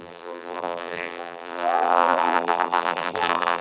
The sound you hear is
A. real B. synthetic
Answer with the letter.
B